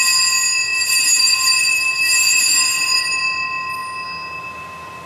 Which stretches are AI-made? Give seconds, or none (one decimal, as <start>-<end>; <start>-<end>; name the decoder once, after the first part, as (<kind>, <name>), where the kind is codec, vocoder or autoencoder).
0.7-3.2 (vocoder, BigVGAN v2)

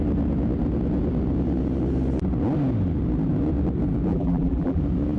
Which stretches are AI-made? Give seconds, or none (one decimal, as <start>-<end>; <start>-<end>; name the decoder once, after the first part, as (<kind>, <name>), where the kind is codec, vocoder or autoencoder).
4.1-4.8 (vocoder, BigVGAN v2)